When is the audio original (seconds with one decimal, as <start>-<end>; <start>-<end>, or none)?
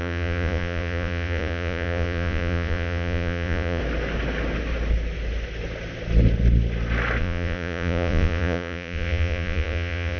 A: 3.8-7.2